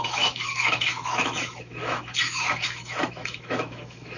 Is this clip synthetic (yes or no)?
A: yes